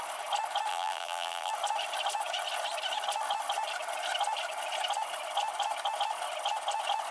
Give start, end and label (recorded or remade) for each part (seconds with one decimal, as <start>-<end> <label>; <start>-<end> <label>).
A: 0.0-0.7 recorded; 0.7-1.5 remade; 1.5-7.1 recorded